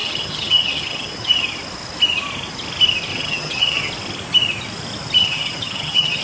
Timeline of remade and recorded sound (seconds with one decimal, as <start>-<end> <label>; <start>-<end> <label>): 0.0-1.3 remade; 1.3-3.1 recorded; 3.1-3.9 remade; 3.9-5.2 recorded; 5.2-6.2 remade